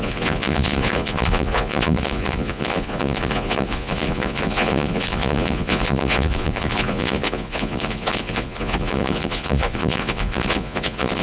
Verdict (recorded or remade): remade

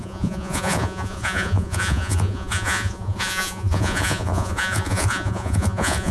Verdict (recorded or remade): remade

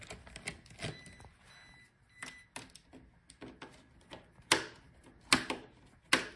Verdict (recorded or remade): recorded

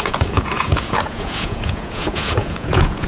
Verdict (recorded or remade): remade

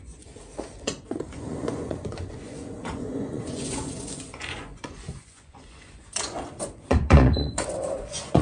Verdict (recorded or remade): remade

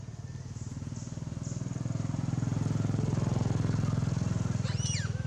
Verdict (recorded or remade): recorded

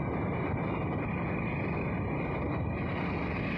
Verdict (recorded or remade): recorded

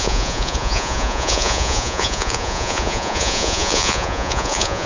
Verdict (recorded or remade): remade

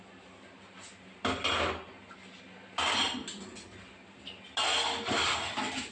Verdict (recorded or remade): recorded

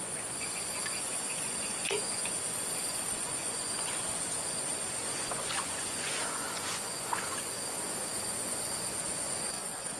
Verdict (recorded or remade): remade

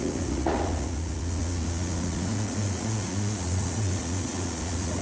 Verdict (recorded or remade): remade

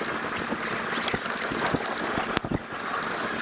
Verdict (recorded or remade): recorded